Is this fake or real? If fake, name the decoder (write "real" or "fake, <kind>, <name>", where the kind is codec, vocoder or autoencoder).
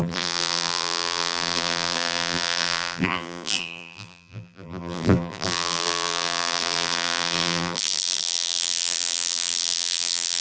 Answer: fake, vocoder, BigVGAN v2